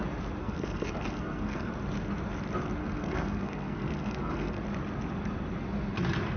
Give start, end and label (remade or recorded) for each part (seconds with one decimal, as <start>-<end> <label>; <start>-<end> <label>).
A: 0.0-0.4 recorded; 0.4-1.7 remade; 1.7-2.8 recorded; 2.8-4.6 remade; 4.6-6.4 recorded